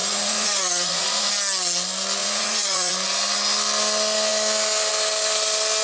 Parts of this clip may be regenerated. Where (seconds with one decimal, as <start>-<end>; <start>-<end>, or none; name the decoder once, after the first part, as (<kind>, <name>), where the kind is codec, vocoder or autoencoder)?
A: 0.0-1.3 (vocoder, Vocos); 2.2-2.9